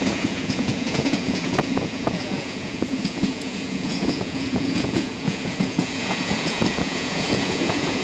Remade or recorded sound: remade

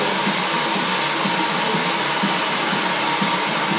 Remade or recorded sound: recorded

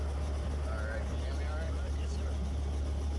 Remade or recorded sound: recorded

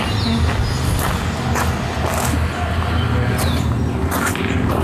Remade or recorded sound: recorded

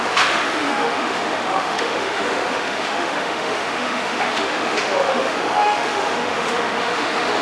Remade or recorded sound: remade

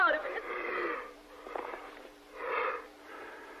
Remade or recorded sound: remade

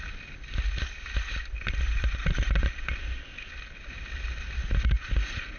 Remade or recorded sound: recorded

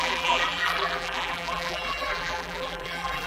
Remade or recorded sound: remade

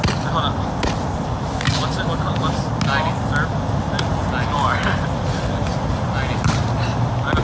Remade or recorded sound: recorded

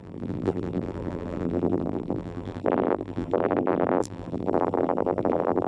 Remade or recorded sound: remade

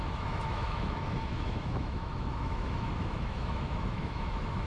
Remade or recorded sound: remade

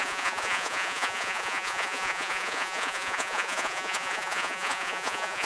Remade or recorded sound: remade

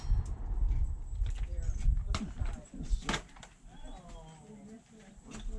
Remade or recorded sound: recorded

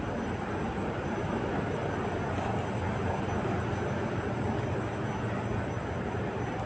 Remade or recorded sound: recorded